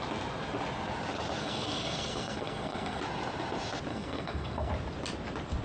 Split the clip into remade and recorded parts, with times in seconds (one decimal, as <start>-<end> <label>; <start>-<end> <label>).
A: 0.0-1.4 recorded; 1.4-3.0 remade; 3.0-3.9 recorded; 3.9-4.7 remade; 4.7-5.6 recorded